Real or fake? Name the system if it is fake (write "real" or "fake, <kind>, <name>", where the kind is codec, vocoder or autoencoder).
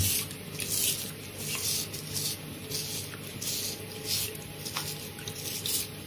real